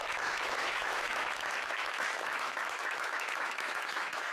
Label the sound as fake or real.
fake